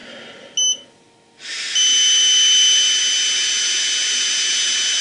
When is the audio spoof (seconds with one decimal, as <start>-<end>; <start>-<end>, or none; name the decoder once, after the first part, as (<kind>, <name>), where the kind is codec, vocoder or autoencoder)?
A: none